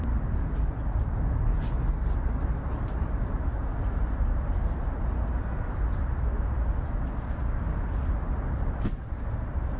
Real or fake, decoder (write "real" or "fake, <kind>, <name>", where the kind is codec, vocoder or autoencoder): real